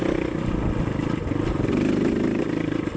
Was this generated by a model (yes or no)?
no